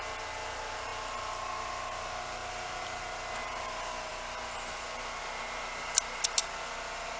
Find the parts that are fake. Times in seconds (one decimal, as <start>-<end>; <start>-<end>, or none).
2.4-3.0; 6.4-7.2